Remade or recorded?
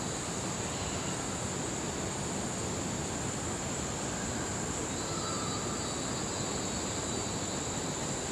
recorded